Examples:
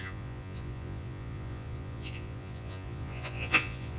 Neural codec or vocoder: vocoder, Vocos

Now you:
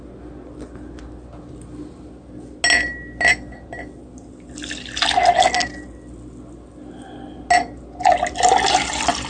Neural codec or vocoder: none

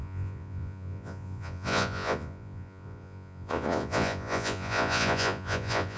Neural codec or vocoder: vocoder, Vocos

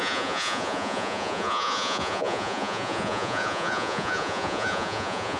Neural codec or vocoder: vocoder, Vocos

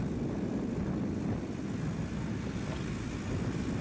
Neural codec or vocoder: none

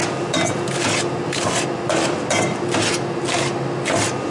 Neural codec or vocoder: none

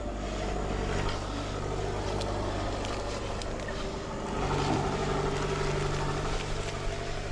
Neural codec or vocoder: none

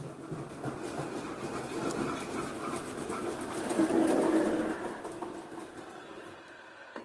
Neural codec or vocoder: none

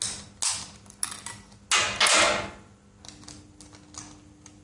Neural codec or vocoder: none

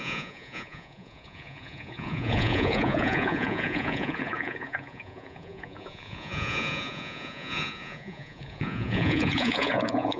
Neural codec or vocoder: vocoder, Vocos